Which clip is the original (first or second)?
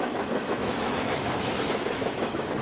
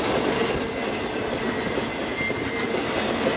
second